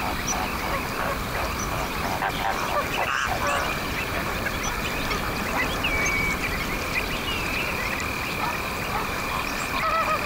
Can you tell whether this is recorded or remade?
remade